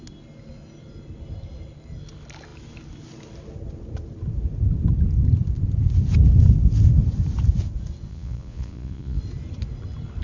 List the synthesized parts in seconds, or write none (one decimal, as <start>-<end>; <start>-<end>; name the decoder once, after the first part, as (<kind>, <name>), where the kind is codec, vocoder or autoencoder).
8.1-9.2 (vocoder, Vocos)